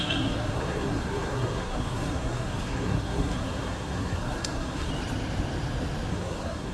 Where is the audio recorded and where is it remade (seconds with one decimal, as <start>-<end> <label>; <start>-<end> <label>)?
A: 0.0-4.9 remade; 4.9-6.1 recorded; 6.1-6.7 remade